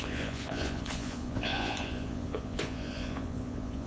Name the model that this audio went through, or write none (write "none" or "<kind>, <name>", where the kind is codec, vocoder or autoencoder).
vocoder, Vocos